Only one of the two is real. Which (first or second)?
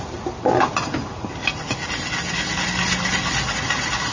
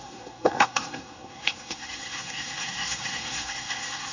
first